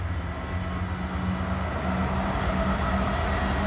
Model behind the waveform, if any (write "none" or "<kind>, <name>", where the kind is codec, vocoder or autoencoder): none